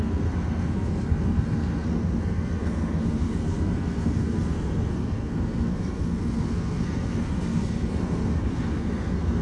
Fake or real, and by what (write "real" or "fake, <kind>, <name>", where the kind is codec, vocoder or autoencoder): fake, codec, SNAC